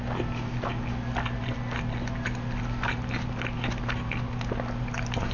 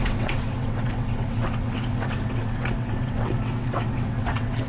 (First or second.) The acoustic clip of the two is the first